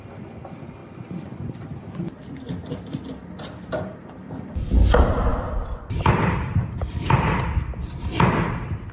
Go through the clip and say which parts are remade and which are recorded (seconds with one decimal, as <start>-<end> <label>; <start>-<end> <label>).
0.0-8.9 remade